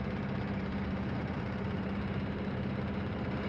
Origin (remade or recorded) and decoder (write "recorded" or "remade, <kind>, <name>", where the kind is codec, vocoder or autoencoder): remade, vocoder, BigVGAN v2